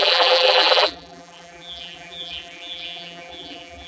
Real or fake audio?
fake